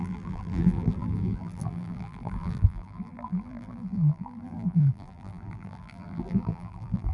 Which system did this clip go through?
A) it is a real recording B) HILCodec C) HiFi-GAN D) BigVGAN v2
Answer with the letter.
D